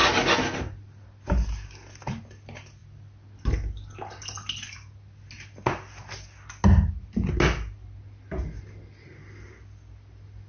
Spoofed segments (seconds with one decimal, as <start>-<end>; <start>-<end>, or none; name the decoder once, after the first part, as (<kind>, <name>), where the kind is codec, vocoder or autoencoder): none

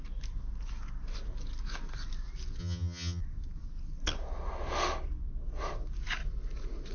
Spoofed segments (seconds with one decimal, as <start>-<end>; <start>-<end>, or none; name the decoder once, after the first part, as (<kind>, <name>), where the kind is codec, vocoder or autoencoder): 2.6-3.2 (vocoder, HiFi-GAN)

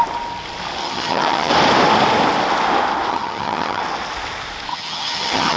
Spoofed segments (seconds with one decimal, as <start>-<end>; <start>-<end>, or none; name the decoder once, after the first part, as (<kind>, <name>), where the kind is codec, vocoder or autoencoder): 0.8-1.5 (vocoder, HiFi-GAN); 3.1-3.8; 4.7-5.6

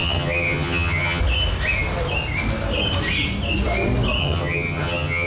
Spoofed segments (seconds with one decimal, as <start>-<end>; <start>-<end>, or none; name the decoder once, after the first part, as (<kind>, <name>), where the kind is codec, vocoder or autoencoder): 0.0-1.2 (vocoder, HiFi-GAN); 4.2-5.3

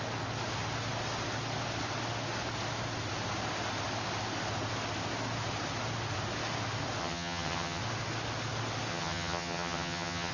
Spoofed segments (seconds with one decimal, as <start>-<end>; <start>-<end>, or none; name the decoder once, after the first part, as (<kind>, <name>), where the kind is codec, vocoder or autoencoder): 7.0-7.8 (vocoder, HiFi-GAN); 8.9-10.3

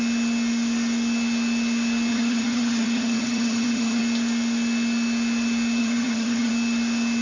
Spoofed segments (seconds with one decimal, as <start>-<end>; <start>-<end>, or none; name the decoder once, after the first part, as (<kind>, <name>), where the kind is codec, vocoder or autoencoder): 2.1-4.0 (vocoder, HiFi-GAN); 5.8-6.5

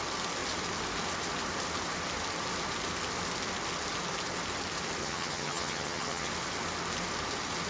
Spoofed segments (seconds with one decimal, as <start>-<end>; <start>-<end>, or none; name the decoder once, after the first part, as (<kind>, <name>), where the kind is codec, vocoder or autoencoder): 5.0-6.3 (vocoder, HiFi-GAN)

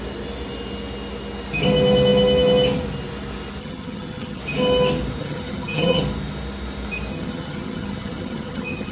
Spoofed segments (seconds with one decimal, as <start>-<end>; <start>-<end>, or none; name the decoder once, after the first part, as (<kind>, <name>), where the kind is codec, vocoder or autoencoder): 3.6-4.4 (vocoder, HiFi-GAN); 5.2-6.0; 7.1-8.9